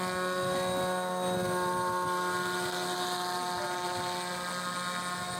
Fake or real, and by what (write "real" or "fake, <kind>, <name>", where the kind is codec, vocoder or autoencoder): real